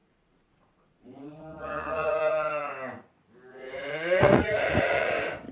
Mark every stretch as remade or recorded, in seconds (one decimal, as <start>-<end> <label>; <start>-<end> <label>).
0.0-2.7 remade; 2.7-3.5 recorded; 3.5-5.1 remade; 5.1-5.5 recorded